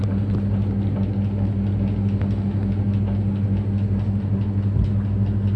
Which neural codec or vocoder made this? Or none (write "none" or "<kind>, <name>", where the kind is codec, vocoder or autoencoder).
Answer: none